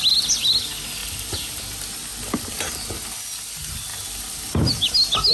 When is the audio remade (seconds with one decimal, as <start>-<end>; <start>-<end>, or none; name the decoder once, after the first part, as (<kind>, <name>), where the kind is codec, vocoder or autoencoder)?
1.0-1.5 (vocoder, BigVGAN v2); 2.1-2.7; 3.9-4.7